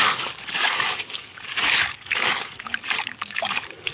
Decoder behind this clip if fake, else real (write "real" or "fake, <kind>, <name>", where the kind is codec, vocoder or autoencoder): fake, codec, DAC